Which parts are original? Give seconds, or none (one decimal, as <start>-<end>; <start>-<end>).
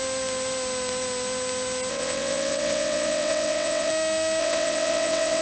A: 0.0-1.9; 3.9-4.4